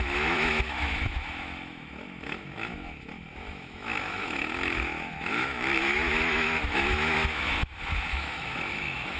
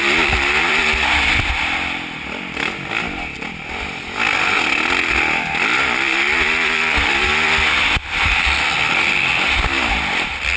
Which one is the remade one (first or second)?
first